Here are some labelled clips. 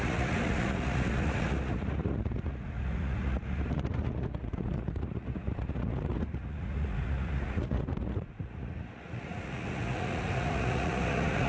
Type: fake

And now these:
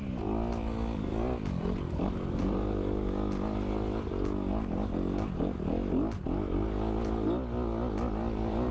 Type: real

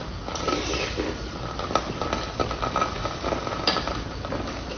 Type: real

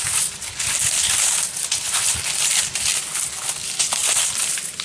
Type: real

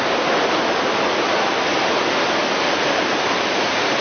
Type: real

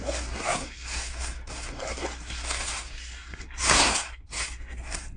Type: fake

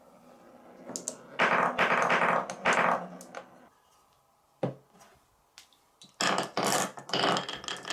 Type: real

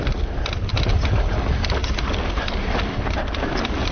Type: real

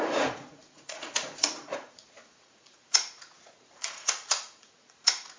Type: fake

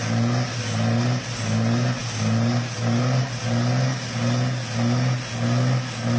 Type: real